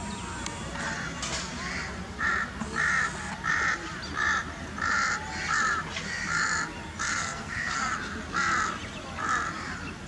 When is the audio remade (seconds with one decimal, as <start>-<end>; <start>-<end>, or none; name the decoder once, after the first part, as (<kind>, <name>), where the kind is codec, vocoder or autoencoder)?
7.1-7.9 (codec, SNAC)

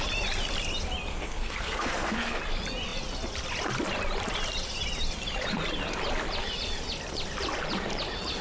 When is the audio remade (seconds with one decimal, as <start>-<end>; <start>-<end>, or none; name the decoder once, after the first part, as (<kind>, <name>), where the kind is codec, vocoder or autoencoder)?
1.1-2.4 (codec, SNAC)

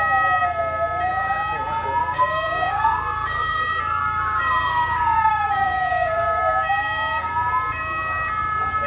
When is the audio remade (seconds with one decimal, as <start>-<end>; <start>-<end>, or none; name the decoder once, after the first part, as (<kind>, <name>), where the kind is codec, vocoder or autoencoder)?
2.0-3.6 (codec, DAC); 4.0-7.5

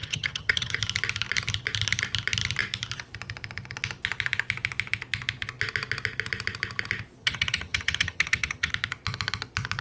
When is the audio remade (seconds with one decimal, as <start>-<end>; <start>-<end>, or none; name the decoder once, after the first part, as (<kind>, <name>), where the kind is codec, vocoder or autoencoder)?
0.0-0.8 (vocoder, HiFi-GAN); 7.2-8.7

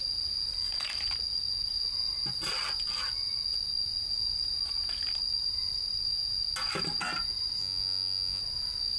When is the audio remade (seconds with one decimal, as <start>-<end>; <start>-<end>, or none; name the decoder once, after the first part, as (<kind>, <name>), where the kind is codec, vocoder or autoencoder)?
7.6-8.4 (vocoder, Vocos)

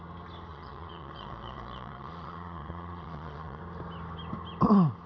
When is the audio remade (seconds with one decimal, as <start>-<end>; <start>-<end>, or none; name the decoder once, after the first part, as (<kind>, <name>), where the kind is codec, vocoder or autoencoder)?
0.5-3.6 (vocoder, Vocos)

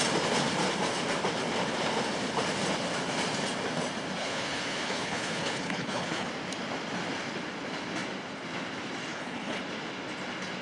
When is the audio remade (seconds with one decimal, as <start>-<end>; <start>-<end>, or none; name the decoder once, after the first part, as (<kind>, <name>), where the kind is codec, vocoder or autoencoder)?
4.2-6.3 (codec, HILCodec); 9.1-9.6

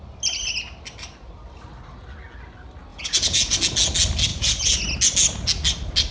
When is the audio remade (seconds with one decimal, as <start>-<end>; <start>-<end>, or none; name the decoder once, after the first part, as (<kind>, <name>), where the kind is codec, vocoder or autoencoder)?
2.9-3.6 (vocoder, Vocos); 4.3-4.8